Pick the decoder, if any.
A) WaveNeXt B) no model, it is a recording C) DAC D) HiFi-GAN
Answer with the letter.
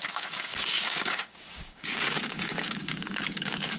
C